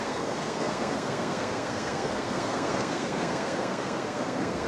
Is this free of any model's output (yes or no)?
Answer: no